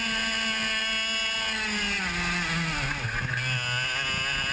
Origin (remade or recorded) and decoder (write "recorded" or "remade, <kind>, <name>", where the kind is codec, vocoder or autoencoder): recorded